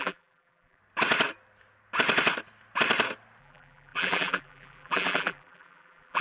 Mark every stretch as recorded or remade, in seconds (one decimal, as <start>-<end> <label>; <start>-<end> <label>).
0.0-0.8 remade; 0.8-3.4 recorded; 3.4-6.2 remade